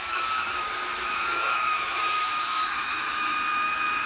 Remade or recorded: remade